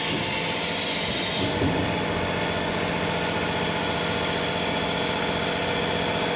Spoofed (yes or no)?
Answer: no